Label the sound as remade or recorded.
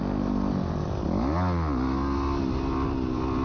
recorded